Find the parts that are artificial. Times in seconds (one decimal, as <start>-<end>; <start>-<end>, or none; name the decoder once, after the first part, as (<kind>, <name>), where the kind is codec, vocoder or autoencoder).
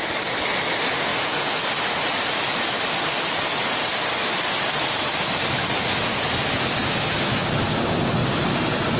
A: none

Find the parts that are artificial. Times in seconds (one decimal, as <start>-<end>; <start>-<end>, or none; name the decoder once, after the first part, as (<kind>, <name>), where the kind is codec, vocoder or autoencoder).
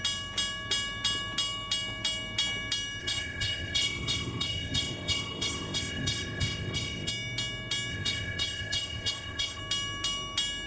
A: 3.0-7.1 (codec, ZipCodec); 7.9-9.6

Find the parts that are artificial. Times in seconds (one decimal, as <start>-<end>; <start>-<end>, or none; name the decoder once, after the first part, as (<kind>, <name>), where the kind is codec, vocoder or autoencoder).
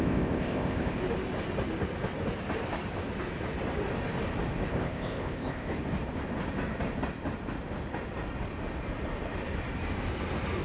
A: 0.0-1.0 (codec, ZipCodec); 4.7-5.7